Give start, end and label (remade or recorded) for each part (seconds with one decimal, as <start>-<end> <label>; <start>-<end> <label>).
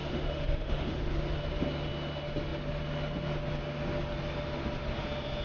0.0-1.1 remade; 1.1-5.4 recorded